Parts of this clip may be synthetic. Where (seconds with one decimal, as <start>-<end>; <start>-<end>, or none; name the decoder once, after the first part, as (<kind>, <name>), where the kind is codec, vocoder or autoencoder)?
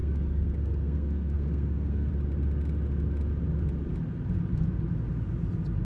0.0-2.1 (codec, SNAC)